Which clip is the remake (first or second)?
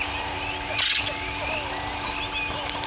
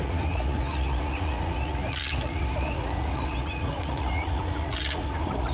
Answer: second